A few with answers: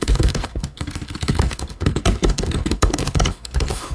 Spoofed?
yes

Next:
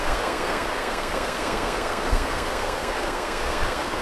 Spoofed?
yes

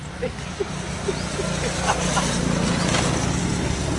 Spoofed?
no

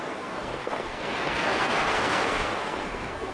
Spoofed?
yes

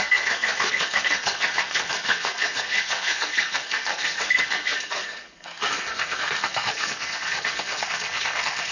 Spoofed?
yes